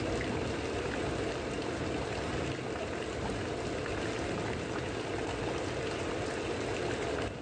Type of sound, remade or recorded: recorded